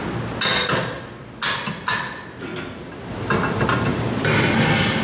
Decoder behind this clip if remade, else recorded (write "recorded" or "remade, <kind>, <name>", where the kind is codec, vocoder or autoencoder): recorded